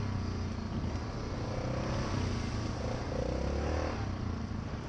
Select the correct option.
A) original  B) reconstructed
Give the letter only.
A